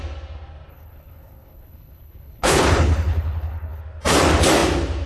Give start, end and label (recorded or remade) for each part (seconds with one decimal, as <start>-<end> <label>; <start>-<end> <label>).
0.0-0.7 recorded; 0.7-3.8 remade; 3.8-5.1 recorded